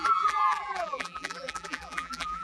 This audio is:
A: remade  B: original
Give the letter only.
A